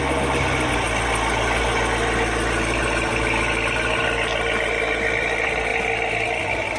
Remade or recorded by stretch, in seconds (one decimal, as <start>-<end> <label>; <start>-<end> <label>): 0.0-6.8 recorded